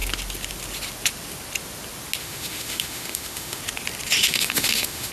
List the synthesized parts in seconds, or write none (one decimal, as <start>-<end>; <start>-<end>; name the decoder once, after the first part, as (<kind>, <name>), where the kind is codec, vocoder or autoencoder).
2.2-3.6 (autoencoder, DAC-VAE); 4.2-5.1